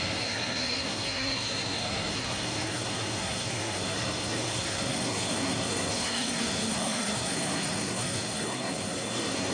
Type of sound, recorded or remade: remade